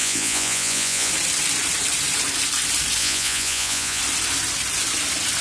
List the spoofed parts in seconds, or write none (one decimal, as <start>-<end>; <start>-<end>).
0.0-1.1; 3.0-4.0